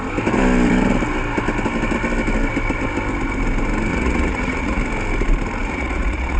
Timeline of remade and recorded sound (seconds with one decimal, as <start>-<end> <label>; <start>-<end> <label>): 0.0-3.9 recorded; 3.9-4.8 remade; 4.8-5.6 recorded; 5.6-6.4 remade